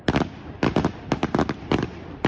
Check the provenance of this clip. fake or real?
real